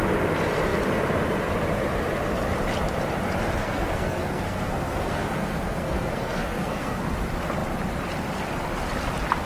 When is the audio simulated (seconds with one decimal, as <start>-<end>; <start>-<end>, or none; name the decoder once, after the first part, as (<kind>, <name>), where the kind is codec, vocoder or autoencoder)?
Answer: 3.6-7.0 (codec, SNAC)